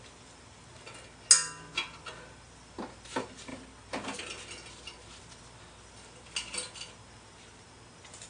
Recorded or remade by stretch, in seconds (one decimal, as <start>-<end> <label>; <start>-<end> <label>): 0.0-8.3 recorded